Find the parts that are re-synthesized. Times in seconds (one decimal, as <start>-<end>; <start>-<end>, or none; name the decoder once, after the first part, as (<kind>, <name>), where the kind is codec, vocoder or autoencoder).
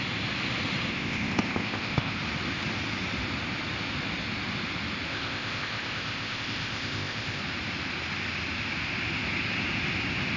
0.9-2.2 (codec, ZipCodec); 5.1-7.4